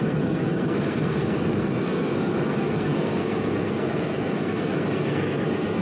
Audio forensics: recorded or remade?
remade